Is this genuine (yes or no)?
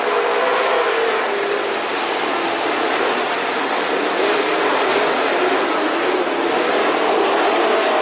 yes